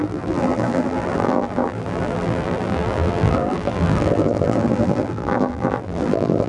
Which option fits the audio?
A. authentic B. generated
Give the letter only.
B